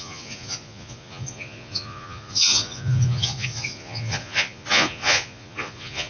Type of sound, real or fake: fake